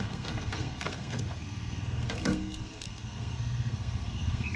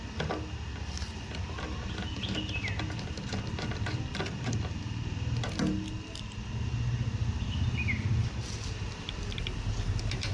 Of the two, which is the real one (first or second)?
second